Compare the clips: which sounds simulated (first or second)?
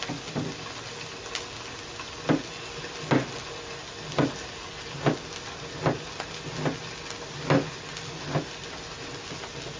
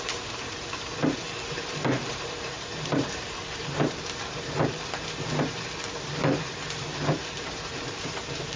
second